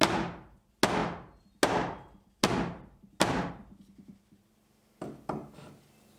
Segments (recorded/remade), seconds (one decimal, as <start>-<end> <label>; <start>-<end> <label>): 0.0-5.4 recorded; 5.4-6.2 remade